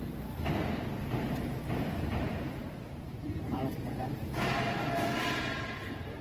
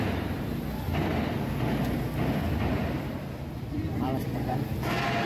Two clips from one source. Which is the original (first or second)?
second